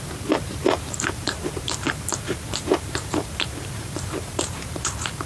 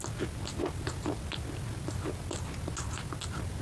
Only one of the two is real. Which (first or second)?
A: second